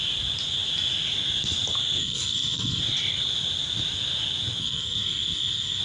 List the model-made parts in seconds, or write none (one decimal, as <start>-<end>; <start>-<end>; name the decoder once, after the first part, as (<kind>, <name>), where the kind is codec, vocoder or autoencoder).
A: 2.0-2.8 (codec, SNAC); 4.6-5.8